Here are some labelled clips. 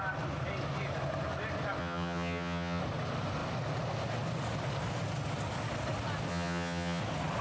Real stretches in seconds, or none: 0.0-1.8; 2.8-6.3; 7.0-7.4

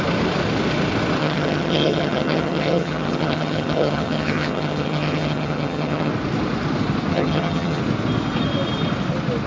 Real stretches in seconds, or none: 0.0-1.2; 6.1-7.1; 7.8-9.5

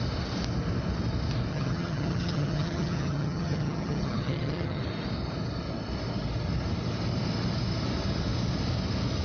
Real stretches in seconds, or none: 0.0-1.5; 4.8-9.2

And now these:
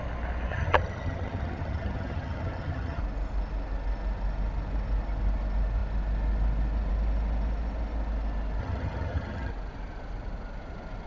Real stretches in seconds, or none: 0.0-0.5; 3.0-8.6; 9.5-11.1

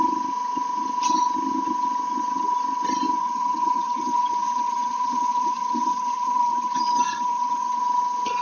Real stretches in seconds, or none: 0.0-3.2; 7.8-8.4

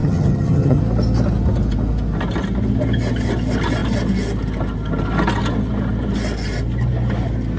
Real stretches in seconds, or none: 0.8-7.6

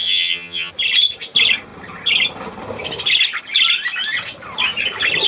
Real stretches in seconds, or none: 0.7-5.3